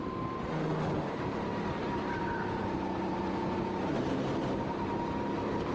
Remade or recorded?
recorded